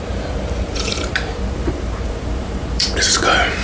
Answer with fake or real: fake